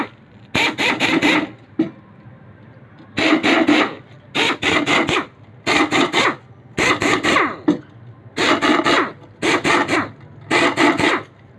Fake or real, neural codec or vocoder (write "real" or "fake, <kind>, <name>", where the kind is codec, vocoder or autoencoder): real